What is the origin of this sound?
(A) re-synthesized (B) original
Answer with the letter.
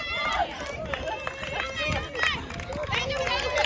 B